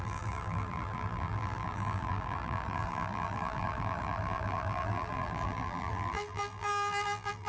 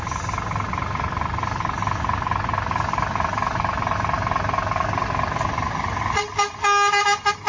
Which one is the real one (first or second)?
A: second